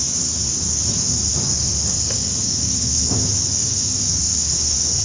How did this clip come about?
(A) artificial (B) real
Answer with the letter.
A